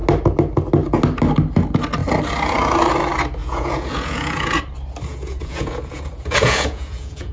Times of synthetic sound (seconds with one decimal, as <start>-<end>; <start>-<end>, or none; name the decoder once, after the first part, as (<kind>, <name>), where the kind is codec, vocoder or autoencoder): 3.4-4.6 (vocoder, Vocos); 5.1-7.3